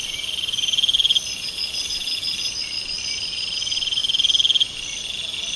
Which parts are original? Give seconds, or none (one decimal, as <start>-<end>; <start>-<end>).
0.0-5.6